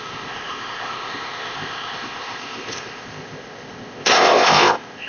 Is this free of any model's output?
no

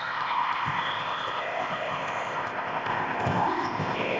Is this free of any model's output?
no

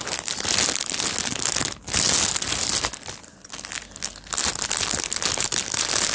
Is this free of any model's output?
yes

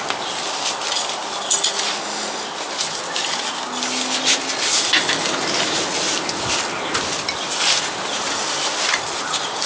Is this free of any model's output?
yes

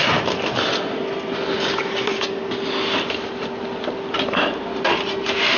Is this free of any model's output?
yes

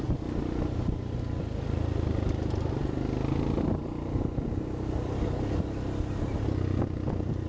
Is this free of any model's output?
yes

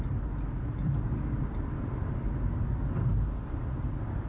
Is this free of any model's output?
yes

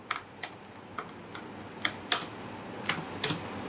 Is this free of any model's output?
yes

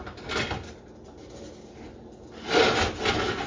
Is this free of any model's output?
yes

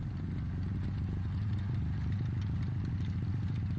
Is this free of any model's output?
yes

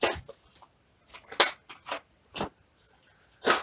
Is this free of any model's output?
yes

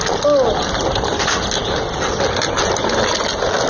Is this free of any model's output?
yes